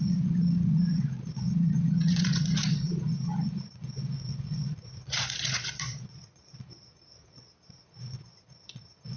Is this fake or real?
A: fake